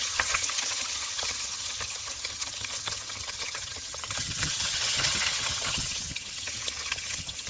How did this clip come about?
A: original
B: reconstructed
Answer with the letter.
B